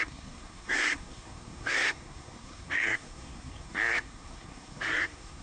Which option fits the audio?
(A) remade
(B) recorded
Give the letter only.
A